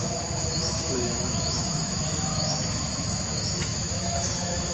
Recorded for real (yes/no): no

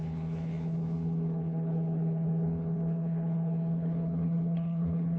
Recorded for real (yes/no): no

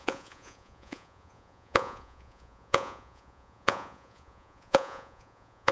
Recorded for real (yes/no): no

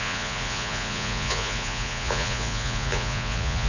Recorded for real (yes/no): no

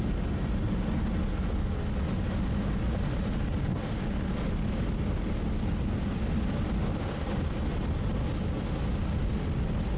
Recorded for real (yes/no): yes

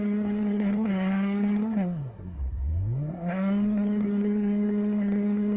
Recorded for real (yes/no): no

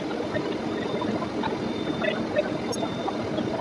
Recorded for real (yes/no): yes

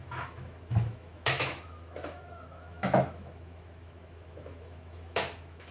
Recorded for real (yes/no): no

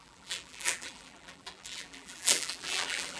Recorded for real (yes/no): no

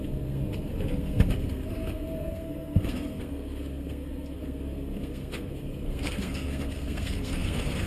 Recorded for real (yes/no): no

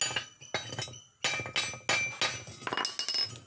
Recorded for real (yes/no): yes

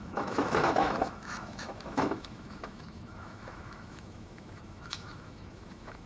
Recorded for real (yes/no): no